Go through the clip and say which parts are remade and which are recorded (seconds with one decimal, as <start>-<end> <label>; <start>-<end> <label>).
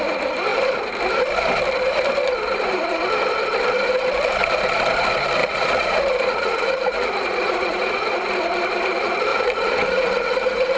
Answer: 0.0-5.4 recorded; 5.4-7.9 remade; 7.9-9.3 recorded; 9.3-10.8 remade